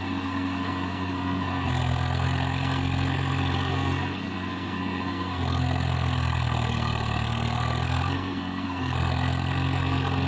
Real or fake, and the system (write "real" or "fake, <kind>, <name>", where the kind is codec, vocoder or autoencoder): fake, codec, SNAC